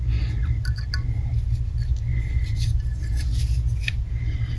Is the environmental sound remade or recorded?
recorded